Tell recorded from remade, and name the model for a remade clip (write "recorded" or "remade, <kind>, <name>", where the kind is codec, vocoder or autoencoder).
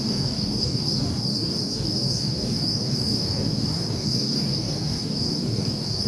remade, codec, DAC